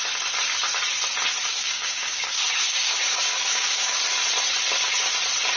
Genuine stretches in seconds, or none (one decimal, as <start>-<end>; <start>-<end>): 0.0-1.5; 4.0-5.6

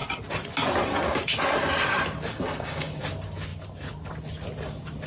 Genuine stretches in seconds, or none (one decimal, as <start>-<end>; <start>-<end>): 0.0-2.3; 3.0-5.1

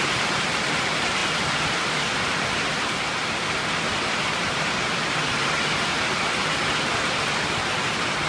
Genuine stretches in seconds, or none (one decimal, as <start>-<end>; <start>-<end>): 0.0-8.3

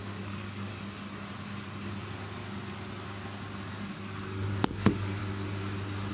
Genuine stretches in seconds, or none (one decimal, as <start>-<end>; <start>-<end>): 0.7-3.7; 5.2-6.1

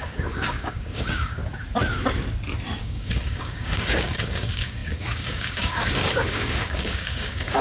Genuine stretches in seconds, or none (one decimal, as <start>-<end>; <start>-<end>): 1.4-2.8

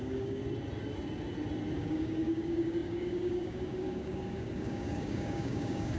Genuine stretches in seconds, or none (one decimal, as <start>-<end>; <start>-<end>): 0.4-1.8

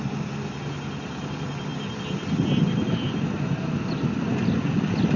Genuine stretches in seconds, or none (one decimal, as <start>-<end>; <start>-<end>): 0.0-5.2

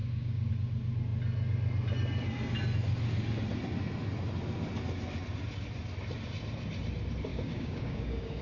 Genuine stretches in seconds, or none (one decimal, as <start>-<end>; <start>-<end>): 0.5-7.3